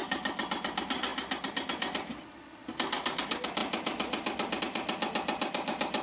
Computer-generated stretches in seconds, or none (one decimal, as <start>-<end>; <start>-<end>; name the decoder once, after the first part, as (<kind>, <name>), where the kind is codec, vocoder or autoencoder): none